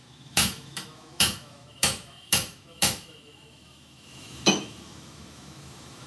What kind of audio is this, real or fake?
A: fake